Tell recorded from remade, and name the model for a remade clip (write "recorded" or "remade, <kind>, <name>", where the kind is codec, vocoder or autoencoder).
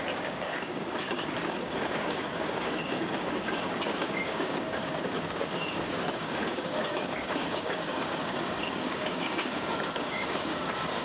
remade, codec, DAC